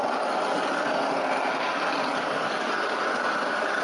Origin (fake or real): real